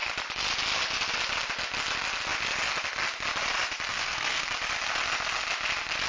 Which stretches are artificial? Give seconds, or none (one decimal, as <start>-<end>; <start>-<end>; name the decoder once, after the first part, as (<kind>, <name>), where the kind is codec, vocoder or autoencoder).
3.9-4.5 (codec, SNAC)